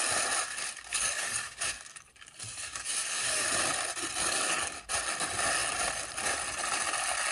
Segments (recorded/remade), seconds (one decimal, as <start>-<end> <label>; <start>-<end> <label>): 0.0-0.9 recorded; 0.9-3.5 remade; 3.5-4.2 recorded; 4.2-4.9 remade; 4.9-7.3 recorded